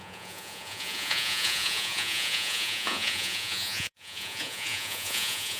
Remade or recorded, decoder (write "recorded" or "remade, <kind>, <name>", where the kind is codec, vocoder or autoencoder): remade, vocoder, Vocos